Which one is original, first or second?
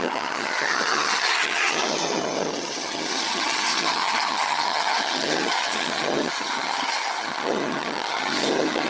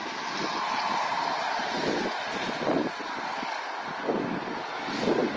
second